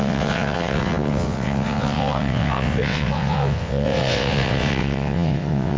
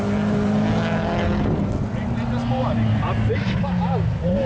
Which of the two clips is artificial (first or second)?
first